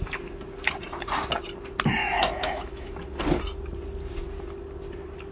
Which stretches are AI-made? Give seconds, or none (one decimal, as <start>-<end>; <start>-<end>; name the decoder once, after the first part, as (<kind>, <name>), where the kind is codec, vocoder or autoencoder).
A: 2.0-2.9 (autoencoder, DAC-VAE)